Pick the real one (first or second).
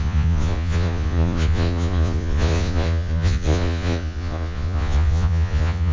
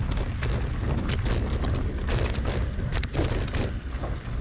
second